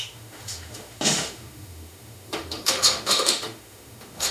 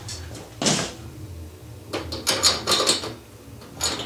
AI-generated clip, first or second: first